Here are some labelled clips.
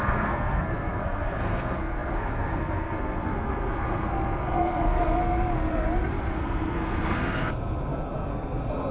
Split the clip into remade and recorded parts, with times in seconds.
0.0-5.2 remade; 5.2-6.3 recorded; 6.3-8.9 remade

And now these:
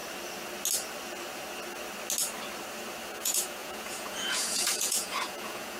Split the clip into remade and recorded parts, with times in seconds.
0.0-3.1 recorded; 3.1-5.8 remade

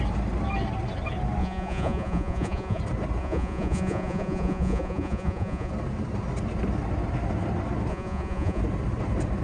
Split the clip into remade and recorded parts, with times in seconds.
0.0-1.4 recorded; 1.4-2.8 remade; 2.8-3.2 recorded; 3.2-5.7 remade; 5.7-7.9 recorded; 7.9-8.6 remade; 8.6-9.4 recorded